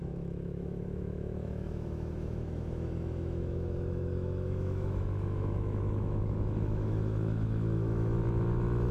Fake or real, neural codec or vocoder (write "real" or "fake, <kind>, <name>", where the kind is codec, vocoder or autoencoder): fake, autoencoder, DAC-VAE